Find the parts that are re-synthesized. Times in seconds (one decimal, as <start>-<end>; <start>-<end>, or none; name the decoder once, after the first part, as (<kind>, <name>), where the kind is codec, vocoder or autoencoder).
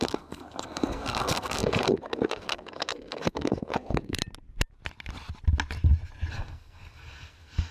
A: 0.0-4.2 (codec, SNAC); 6.3-7.7